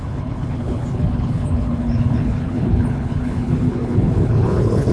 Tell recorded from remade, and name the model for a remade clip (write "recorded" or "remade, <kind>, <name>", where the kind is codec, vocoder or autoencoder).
remade, codec, HILCodec